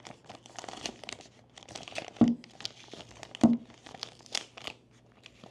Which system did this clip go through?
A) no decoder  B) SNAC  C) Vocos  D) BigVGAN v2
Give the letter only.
A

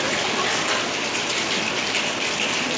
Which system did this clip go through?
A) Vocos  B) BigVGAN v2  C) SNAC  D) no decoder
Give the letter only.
D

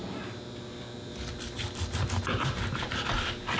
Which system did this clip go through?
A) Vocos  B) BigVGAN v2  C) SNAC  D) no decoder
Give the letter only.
D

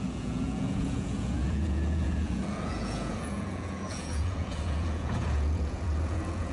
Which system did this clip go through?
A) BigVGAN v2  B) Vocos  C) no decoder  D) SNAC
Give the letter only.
B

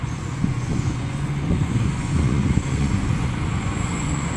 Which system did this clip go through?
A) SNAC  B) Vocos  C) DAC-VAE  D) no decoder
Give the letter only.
B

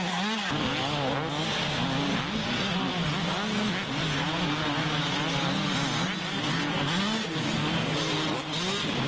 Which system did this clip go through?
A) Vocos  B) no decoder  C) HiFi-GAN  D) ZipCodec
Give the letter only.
B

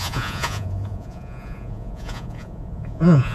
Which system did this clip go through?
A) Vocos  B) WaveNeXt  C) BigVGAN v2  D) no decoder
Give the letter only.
A